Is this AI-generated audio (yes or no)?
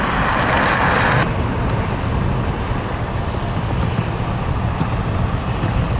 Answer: no